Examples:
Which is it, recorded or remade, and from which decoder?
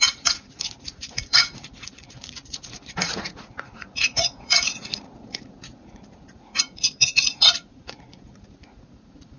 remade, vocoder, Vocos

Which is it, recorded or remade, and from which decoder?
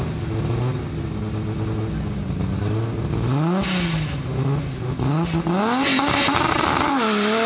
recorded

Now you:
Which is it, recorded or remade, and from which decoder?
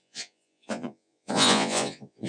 remade, vocoder, Vocos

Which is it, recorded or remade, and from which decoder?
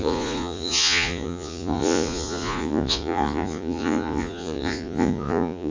remade, vocoder, Vocos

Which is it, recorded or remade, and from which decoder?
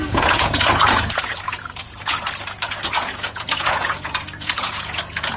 remade, vocoder, Vocos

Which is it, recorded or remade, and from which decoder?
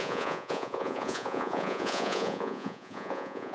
remade, vocoder, Vocos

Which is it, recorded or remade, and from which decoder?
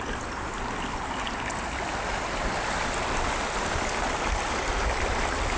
recorded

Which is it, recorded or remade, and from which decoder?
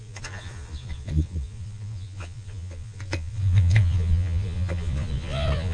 remade, vocoder, Vocos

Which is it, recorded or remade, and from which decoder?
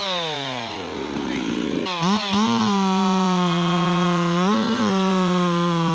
remade, vocoder, Vocos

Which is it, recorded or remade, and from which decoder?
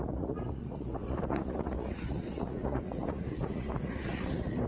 remade, vocoder, Vocos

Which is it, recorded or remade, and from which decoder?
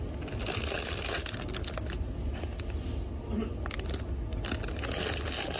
recorded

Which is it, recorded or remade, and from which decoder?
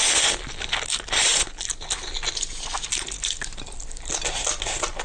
recorded